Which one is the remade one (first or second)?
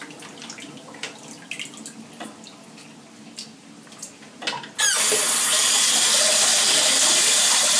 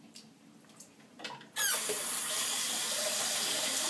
second